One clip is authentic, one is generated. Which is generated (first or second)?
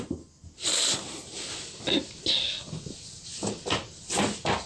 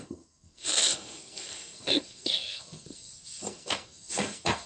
second